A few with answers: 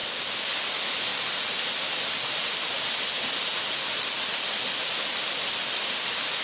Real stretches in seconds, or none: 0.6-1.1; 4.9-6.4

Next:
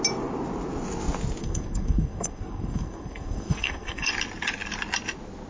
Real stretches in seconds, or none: 0.0-1.4; 4.1-5.5